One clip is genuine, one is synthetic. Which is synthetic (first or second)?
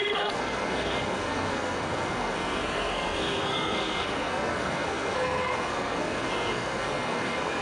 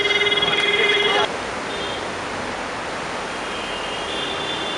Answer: first